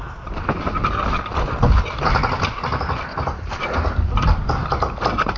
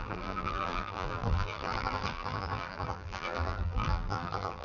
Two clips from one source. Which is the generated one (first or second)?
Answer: second